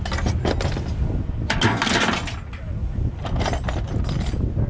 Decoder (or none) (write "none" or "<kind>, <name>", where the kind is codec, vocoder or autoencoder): none